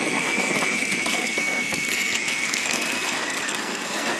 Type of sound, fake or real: fake